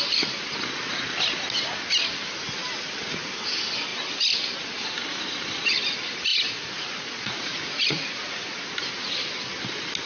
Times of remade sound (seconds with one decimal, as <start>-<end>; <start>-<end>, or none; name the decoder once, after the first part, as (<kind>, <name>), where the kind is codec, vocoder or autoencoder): 6.3-8.7 (vocoder, Vocos)